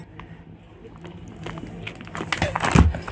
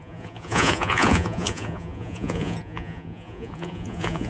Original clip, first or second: first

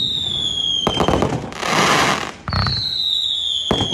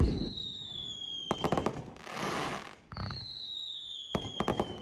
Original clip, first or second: first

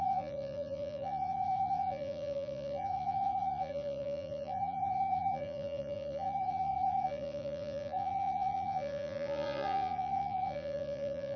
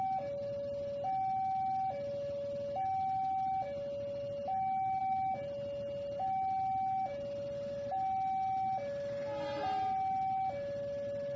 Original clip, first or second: second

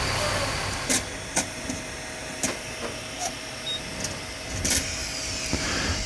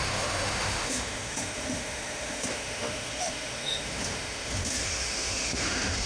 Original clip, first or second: first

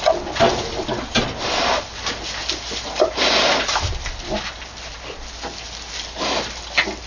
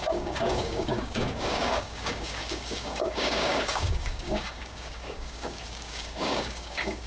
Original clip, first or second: first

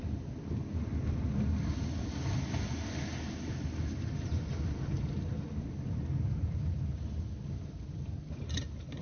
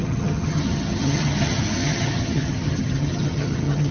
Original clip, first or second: first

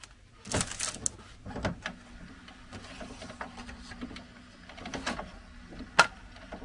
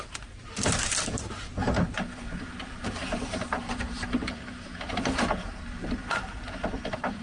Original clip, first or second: first